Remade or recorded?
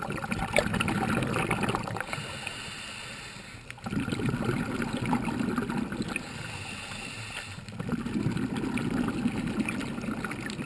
recorded